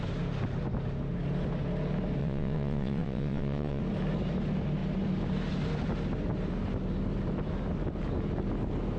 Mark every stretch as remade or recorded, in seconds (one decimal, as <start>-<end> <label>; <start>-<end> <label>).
0.0-2.2 recorded; 2.2-3.8 remade; 3.8-9.0 recorded